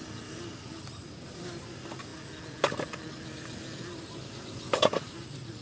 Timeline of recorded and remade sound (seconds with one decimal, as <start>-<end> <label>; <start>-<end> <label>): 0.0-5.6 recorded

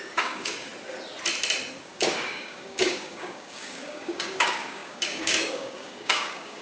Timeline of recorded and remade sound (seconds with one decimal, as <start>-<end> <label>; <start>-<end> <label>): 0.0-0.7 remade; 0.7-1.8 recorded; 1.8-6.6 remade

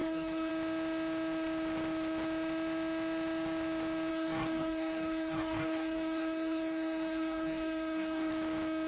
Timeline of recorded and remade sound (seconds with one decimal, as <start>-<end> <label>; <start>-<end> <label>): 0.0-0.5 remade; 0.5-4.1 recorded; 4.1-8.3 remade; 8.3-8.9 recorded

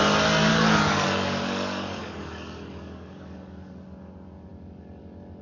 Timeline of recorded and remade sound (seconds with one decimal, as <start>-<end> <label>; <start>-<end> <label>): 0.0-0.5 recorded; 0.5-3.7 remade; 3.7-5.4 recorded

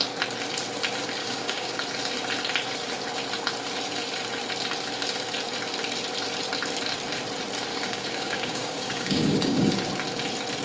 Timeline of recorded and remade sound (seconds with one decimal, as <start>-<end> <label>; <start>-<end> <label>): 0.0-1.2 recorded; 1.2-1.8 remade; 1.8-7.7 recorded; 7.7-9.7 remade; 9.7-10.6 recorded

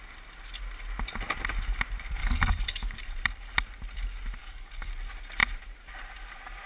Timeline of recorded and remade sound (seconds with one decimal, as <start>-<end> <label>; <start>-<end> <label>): 0.0-2.2 recorded; 2.2-3.0 remade; 3.0-4.4 recorded; 4.4-4.9 remade; 4.9-6.7 recorded